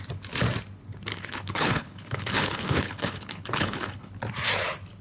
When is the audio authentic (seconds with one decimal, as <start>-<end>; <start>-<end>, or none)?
0.0-1.1; 4.1-5.0